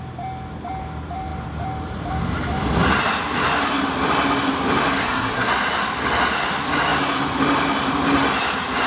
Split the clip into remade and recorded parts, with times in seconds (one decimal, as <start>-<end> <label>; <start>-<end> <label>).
0.0-5.0 recorded; 5.0-5.5 remade; 5.5-8.9 recorded